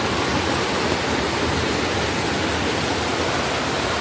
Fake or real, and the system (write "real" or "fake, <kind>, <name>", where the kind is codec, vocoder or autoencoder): real